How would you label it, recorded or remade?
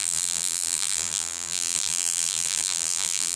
remade